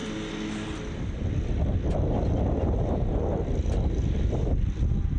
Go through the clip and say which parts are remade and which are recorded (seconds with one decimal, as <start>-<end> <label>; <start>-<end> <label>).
0.0-5.2 recorded

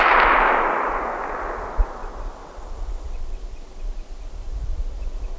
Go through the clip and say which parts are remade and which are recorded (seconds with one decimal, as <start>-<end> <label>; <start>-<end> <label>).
0.0-2.4 recorded; 2.4-3.2 remade; 3.2-5.4 recorded

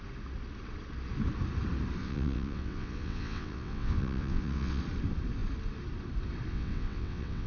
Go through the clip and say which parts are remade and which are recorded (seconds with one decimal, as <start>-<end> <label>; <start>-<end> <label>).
0.0-2.0 recorded; 2.0-4.8 remade; 4.8-6.5 recorded; 6.5-7.5 remade

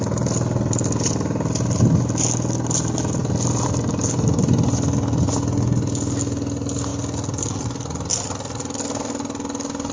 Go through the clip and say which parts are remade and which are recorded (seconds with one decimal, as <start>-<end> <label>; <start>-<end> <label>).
0.0-9.9 recorded

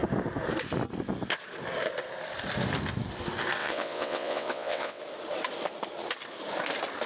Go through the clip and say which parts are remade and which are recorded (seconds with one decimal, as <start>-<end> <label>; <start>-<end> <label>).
0.0-3.6 recorded; 3.6-5.0 remade; 5.0-7.1 recorded